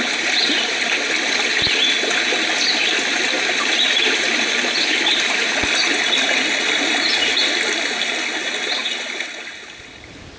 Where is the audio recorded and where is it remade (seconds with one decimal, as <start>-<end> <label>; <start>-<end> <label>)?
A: 0.0-5.8 recorded; 5.8-7.4 remade; 7.4-8.8 recorded; 8.8-9.5 remade; 9.5-10.4 recorded